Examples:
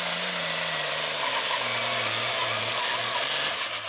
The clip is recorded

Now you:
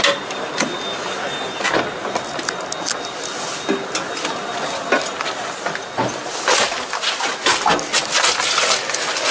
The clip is recorded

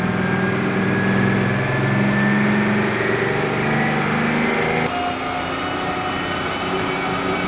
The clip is recorded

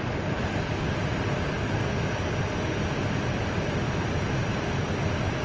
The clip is recorded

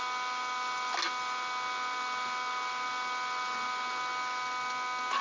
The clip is recorded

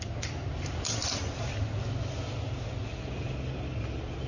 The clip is recorded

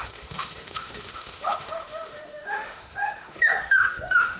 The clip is remade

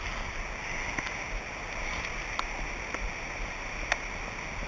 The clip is recorded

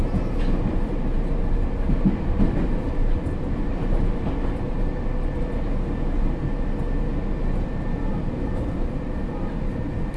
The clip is recorded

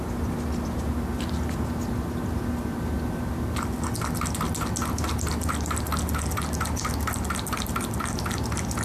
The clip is recorded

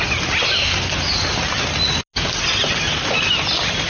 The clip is recorded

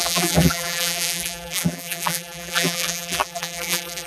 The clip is remade